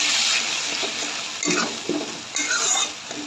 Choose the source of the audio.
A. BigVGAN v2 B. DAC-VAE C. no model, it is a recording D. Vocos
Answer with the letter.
C